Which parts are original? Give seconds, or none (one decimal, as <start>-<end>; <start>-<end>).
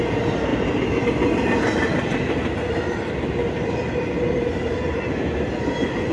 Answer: 0.0-0.5; 1.0-6.1